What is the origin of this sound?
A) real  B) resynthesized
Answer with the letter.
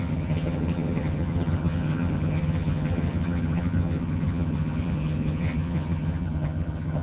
B